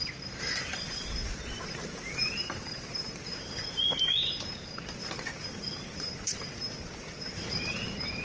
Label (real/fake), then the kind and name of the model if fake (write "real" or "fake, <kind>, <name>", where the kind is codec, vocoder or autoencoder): fake, vocoder, BigVGAN v2